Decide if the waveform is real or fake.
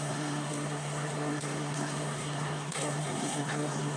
fake